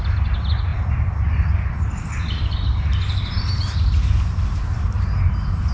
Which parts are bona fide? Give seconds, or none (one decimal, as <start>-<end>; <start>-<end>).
0.0-5.7